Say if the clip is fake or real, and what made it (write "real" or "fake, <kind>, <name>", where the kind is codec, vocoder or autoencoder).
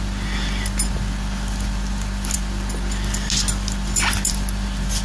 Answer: real